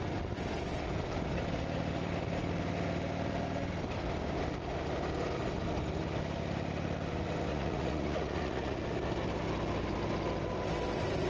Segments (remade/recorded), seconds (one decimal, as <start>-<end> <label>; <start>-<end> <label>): 0.0-7.5 recorded; 7.5-8.8 remade; 8.8-11.3 recorded